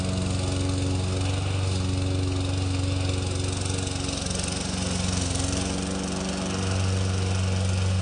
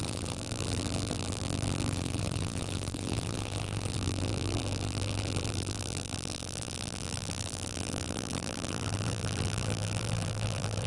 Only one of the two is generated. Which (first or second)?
second